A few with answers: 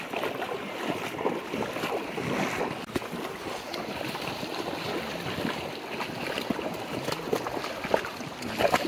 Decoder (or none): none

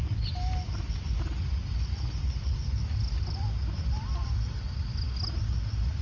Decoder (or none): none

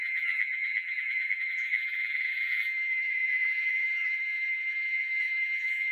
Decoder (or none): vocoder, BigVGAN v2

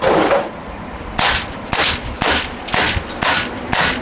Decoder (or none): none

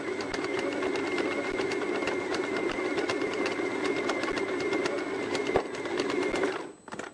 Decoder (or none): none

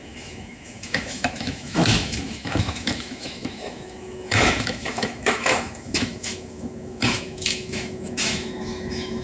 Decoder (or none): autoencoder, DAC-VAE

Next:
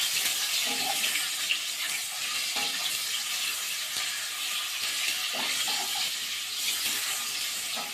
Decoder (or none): none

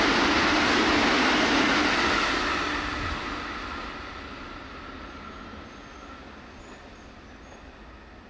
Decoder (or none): none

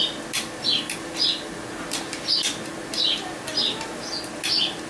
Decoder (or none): none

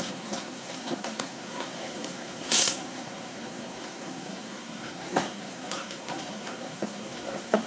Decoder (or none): codec, SNAC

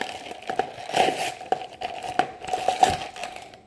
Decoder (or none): none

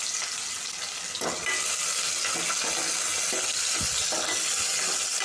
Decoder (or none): none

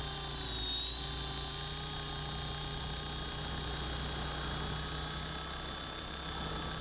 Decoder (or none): none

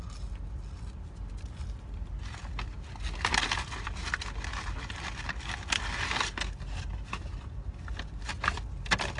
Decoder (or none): none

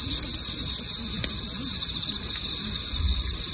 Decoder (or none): none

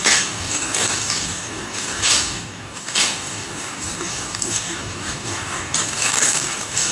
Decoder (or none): codec, DAC